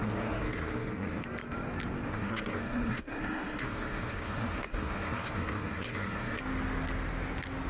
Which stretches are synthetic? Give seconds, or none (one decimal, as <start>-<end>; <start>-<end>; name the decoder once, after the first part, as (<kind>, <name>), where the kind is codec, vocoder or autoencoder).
0.0-1.2 (codec, SNAC); 2.1-6.4